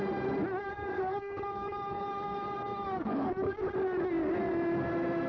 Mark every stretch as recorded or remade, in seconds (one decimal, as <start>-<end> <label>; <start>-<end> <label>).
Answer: 0.0-0.6 recorded; 0.6-3.7 remade; 3.7-5.3 recorded